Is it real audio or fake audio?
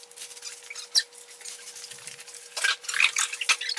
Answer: real